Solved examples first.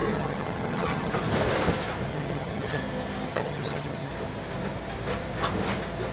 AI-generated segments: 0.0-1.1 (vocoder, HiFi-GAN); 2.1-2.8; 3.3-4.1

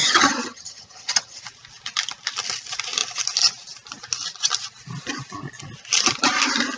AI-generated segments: 0.0-1.4 (vocoder, HiFi-GAN)

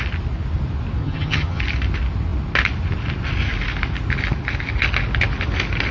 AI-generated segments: 1.0-1.6 (vocoder, HiFi-GAN)

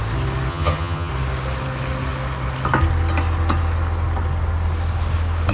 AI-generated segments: 0.5-1.1 (vocoder, HiFi-GAN)

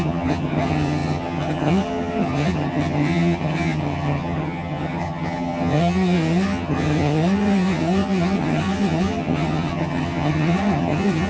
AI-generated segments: 0.0-11.3 (vocoder, HiFi-GAN)

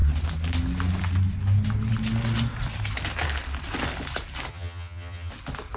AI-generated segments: 4.5-5.3 (vocoder, HiFi-GAN)

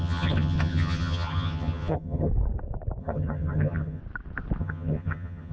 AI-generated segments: 0.0-2.3 (vocoder, HiFi-GAN); 3.0-4.0; 4.6-5.5

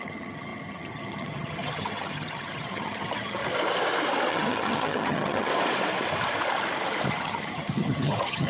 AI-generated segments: 0.0-3.4 (vocoder, HiFi-GAN); 4.3-5.5; 7.1-8.5